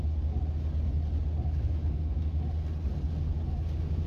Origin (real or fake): real